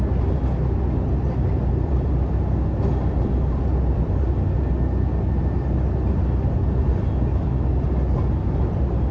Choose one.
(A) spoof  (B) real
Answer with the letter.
B